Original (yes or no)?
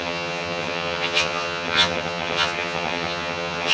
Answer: no